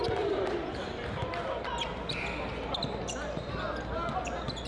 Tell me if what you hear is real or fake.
real